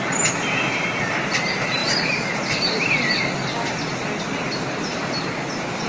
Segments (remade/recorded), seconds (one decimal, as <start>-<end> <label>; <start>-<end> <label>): 0.0-1.8 recorded; 1.8-3.2 remade; 3.2-5.9 recorded